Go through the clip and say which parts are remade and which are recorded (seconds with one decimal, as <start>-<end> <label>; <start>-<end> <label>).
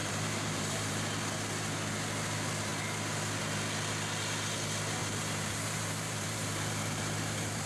0.0-1.2 remade; 1.2-5.0 recorded; 5.0-7.7 remade